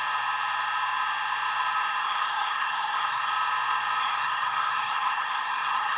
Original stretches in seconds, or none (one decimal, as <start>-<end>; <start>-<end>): 0.0-2.0; 3.3-4.0